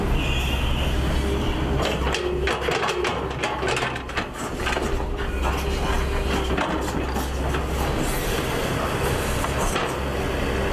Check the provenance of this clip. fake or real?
real